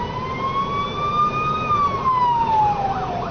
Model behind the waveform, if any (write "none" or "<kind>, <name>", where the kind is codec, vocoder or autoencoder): none